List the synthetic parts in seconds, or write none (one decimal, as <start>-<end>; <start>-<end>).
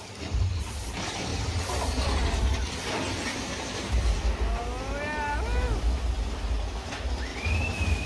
1.3-3.9